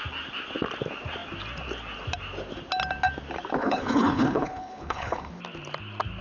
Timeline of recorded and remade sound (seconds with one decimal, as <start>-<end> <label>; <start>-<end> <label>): 0.0-3.6 recorded; 3.6-5.3 remade; 5.3-6.2 recorded